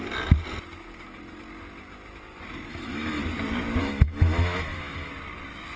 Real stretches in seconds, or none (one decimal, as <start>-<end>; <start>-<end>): 0.0-2.7; 3.2-3.8; 5.1-5.8